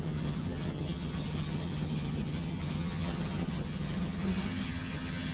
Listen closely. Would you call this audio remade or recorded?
remade